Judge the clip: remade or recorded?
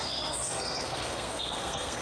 remade